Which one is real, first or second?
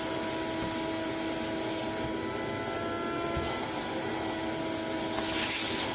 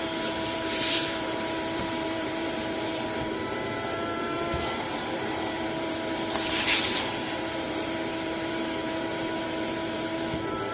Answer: first